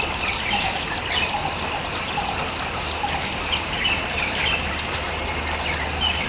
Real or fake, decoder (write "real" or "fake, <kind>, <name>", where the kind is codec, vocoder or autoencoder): real